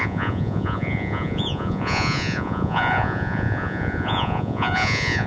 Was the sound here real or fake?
fake